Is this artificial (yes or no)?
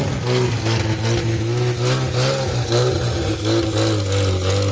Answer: no